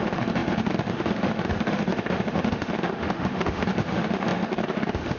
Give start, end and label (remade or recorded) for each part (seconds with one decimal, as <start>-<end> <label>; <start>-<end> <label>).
0.0-5.2 remade